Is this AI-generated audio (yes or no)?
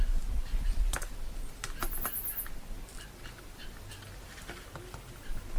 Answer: no